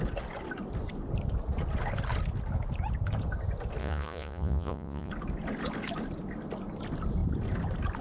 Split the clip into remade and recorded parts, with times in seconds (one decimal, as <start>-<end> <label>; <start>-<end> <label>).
0.0-3.8 recorded; 3.8-5.1 remade; 5.1-8.0 recorded

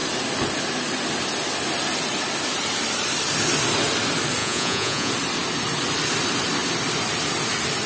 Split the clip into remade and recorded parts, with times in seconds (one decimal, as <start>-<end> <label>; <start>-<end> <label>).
0.0-4.4 recorded; 4.4-5.1 remade; 5.1-7.9 recorded

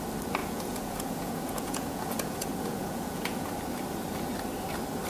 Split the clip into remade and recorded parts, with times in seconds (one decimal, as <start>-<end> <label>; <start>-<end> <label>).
0.0-0.4 recorded; 0.4-3.5 remade; 3.5-5.1 recorded

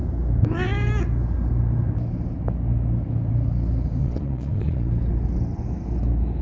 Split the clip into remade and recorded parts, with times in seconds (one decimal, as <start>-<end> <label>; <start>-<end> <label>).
0.0-4.0 recorded; 4.0-4.9 remade; 4.9-6.4 recorded

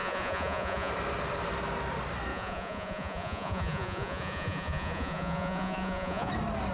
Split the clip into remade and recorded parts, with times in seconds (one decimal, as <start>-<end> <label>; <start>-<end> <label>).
0.0-0.9 remade; 0.9-2.3 recorded; 2.3-6.3 remade; 6.3-6.7 recorded

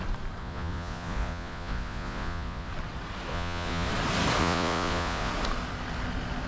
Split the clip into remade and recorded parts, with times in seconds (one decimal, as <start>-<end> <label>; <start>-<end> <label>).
0.0-0.4 recorded; 0.4-2.7 remade; 2.7-3.3 recorded; 3.3-3.9 remade; 3.9-4.4 recorded; 4.4-5.3 remade; 5.3-6.5 recorded